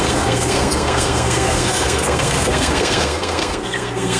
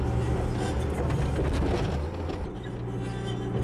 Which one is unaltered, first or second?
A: second